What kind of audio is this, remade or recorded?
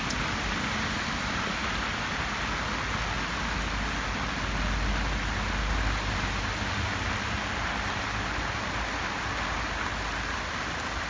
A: recorded